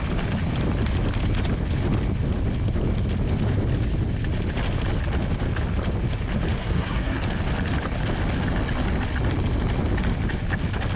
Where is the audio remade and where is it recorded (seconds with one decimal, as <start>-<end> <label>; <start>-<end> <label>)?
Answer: 0.0-6.6 recorded; 6.6-7.2 remade; 7.2-11.0 recorded